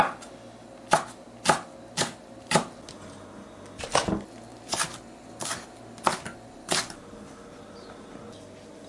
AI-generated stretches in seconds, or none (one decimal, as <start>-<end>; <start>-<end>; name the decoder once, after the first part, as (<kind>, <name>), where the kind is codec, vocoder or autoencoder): 4.5-5.0 (vocoder, BigVGAN v2)